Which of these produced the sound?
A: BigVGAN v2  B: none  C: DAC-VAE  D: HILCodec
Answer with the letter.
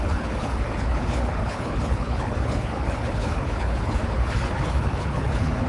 D